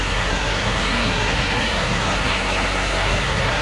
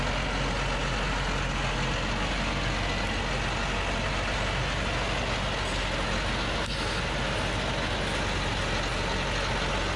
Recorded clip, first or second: second